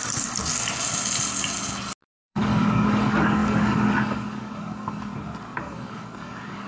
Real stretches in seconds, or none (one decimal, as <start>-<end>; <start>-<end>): 0.5-2.2; 5.1-5.6